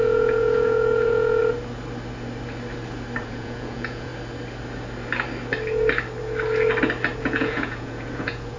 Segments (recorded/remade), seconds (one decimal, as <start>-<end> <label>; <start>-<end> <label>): 0.0-1.4 remade; 1.4-3.2 recorded; 3.2-4.1 remade; 4.1-7.2 recorded; 7.2-8.6 remade